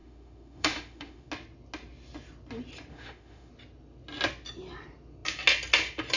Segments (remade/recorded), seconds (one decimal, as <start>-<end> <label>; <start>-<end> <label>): 0.0-1.3 remade; 1.3-2.9 recorded; 2.9-3.5 remade; 3.5-6.2 recorded